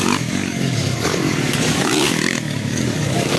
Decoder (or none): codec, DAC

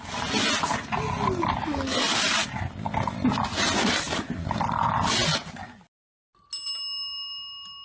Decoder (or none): none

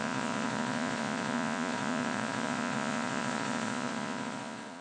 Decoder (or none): vocoder, Vocos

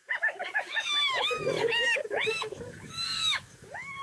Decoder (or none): codec, DAC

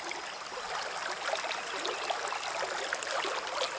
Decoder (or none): none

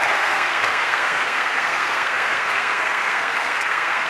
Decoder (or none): codec, SNAC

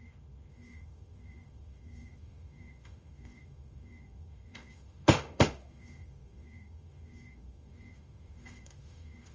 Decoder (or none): autoencoder, DAC-VAE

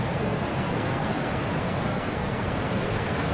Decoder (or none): codec, SNAC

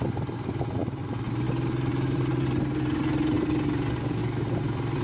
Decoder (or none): none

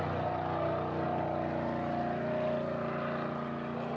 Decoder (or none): none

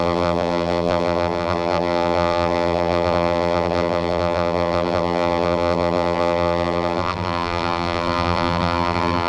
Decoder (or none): vocoder, BigVGAN v2